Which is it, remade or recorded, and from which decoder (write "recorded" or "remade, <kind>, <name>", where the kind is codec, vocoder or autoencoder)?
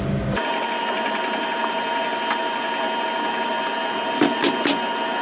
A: recorded